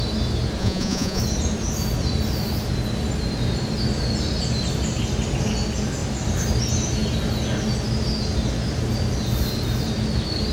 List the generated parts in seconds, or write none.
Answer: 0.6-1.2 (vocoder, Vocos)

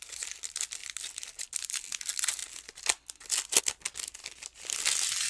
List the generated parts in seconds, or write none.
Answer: none